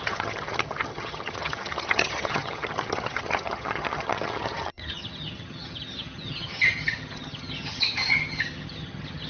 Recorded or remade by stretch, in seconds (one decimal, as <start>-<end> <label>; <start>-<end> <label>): 0.0-9.3 remade

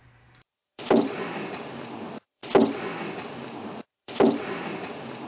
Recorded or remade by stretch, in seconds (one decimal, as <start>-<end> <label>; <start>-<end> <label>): 0.0-2.4 remade; 2.4-3.3 recorded; 3.3-5.3 remade